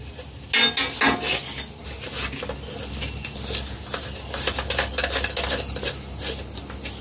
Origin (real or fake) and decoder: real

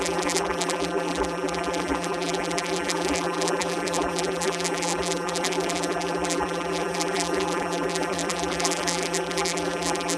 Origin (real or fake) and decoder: fake, vocoder, BigVGAN v2